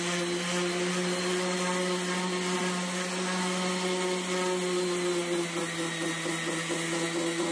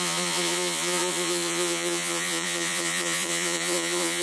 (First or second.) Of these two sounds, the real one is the first